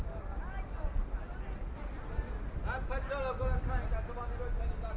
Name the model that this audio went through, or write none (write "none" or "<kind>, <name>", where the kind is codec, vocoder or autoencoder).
none